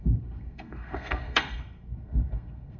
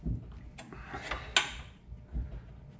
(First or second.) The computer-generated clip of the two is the first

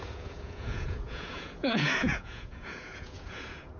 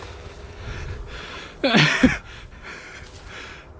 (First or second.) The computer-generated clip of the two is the first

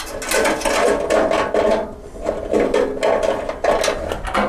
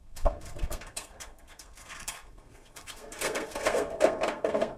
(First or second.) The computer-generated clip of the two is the second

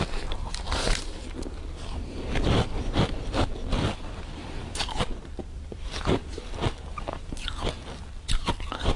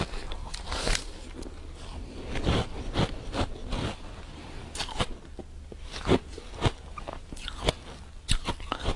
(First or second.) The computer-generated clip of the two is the first